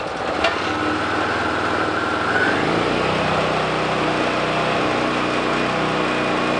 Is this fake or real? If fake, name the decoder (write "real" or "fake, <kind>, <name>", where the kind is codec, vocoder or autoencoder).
real